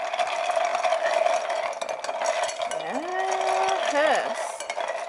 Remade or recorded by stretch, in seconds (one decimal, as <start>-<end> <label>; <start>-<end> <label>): 0.0-5.1 recorded